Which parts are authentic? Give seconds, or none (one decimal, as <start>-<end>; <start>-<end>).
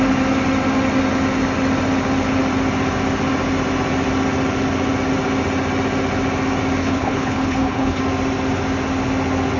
0.0-6.8; 8.0-9.6